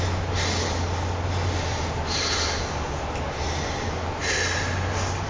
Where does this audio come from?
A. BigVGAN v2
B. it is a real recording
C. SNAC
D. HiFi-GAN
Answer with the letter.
B